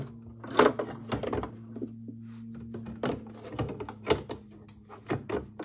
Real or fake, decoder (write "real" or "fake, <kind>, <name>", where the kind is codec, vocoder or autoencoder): real